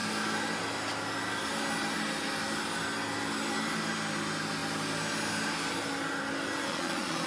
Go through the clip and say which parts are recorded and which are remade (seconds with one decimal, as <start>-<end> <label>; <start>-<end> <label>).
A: 0.0-6.7 recorded; 6.7-7.3 remade